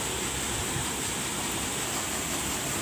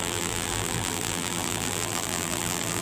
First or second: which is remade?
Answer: second